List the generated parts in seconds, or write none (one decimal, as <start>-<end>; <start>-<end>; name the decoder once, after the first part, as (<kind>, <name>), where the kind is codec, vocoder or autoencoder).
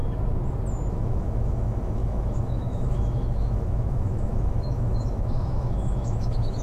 0.9-6.6 (autoencoder, DAC-VAE)